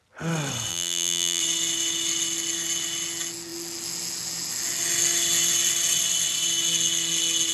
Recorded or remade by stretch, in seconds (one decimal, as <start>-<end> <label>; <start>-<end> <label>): 0.0-0.7 recorded; 0.7-1.4 remade; 1.4-7.5 recorded